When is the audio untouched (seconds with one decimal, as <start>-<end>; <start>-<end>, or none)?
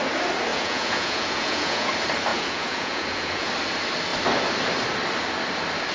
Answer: 0.0-0.5; 1.9-2.3; 3.5-5.9